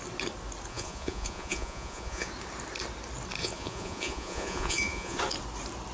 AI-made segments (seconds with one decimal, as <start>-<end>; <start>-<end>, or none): 0.7-2.3; 3.4-5.2